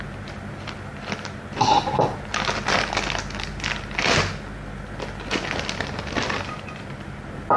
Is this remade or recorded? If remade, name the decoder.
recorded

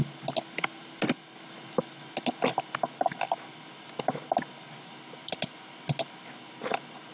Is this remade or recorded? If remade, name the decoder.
recorded